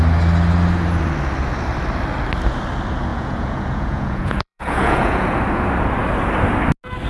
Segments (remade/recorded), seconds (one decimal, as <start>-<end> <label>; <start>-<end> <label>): 0.0-3.1 recorded; 3.1-5.4 remade; 5.4-7.1 recorded